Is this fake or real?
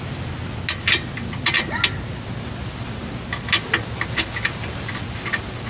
real